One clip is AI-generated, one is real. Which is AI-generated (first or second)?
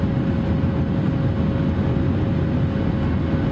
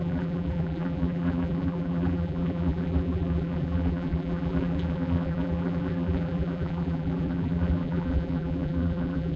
second